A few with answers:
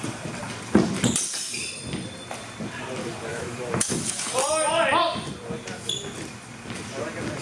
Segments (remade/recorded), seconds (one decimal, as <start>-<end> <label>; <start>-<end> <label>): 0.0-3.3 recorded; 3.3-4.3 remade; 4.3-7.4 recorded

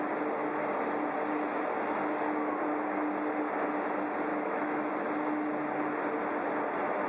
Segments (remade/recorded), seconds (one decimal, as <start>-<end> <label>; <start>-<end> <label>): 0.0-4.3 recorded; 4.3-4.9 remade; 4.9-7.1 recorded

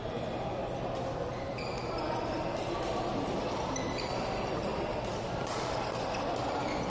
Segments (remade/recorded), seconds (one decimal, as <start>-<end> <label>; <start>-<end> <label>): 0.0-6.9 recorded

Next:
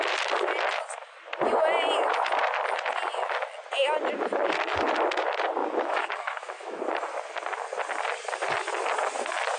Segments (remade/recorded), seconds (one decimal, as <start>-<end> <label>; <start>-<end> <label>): 0.0-5.6 recorded; 5.6-6.8 remade; 6.8-9.6 recorded